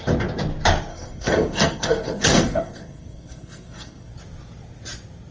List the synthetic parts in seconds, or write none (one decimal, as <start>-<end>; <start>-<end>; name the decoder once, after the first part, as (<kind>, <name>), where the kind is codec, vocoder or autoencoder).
0.9-4.1 (codec, SNAC)